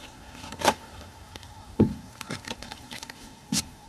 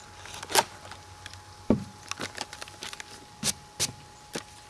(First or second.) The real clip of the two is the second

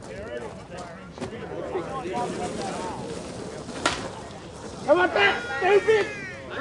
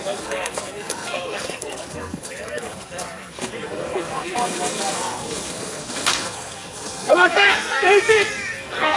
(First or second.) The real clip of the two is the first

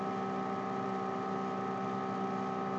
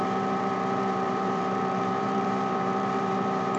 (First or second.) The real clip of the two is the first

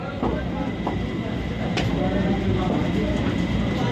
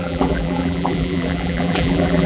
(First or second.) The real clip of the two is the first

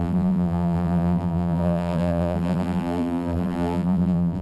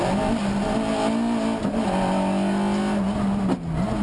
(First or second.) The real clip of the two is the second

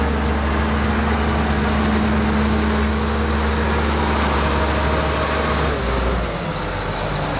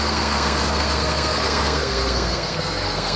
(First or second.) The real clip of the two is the first